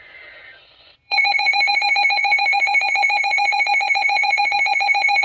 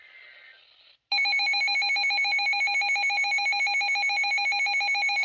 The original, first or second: second